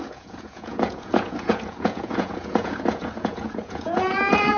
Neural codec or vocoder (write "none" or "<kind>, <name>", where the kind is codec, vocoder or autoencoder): vocoder, Vocos